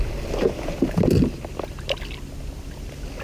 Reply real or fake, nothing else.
real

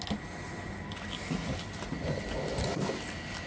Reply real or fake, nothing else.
real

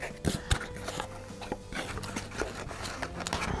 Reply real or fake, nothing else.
real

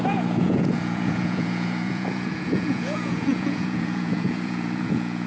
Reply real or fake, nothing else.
fake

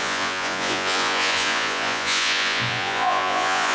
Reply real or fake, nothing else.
fake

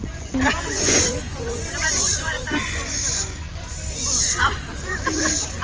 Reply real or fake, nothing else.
fake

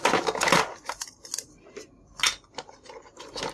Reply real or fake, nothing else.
real